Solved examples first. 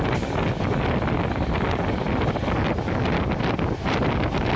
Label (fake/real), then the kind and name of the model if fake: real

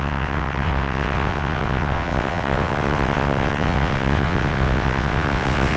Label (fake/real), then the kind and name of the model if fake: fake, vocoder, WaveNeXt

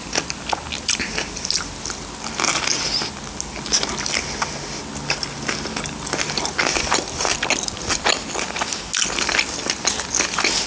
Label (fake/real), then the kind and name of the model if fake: real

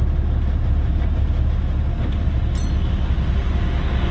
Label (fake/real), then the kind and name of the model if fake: real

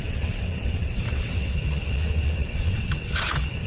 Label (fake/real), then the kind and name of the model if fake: fake, vocoder, WaveNeXt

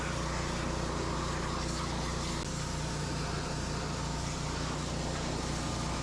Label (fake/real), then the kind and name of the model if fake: real